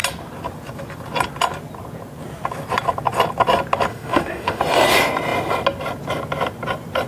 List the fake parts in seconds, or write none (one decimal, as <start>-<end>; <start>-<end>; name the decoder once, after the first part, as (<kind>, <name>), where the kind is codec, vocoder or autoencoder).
3.9-4.6 (autoencoder, DAC-VAE)